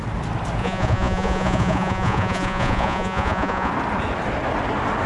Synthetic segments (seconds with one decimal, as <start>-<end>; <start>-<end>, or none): 0.6-3.7